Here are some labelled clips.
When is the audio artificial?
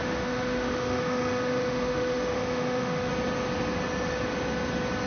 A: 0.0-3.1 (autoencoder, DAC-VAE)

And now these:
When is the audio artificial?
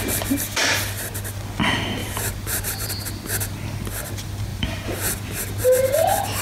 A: 2.0-2.9 (vocoder, BigVGAN v2); 4.5-5.4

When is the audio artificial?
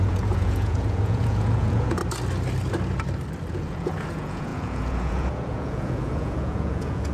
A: 0.0-2.0 (vocoder, Vocos); 3.5-7.1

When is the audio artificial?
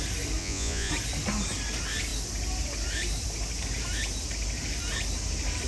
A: 0.4-0.9 (vocoder, Vocos)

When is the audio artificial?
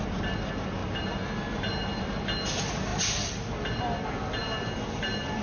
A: none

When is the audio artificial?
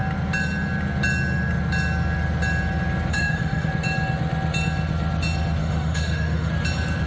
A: 3.1-3.7 (autoencoder, DAC-VAE); 5.6-6.5